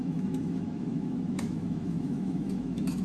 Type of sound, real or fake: fake